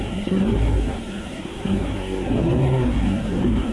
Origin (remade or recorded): remade